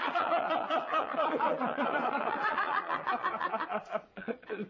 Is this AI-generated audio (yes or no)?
yes